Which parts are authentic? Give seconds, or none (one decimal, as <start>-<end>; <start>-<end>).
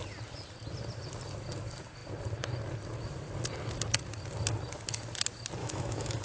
0.0-5.6